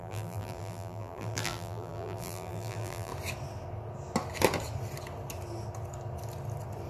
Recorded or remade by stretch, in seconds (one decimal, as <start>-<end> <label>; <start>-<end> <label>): 0.0-3.1 remade; 3.1-6.9 recorded